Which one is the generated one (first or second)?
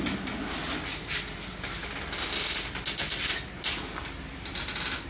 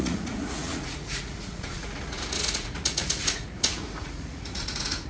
second